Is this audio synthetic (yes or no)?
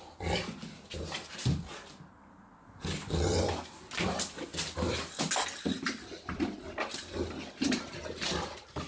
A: no